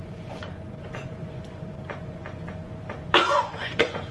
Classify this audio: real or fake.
fake